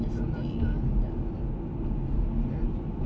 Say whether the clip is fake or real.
real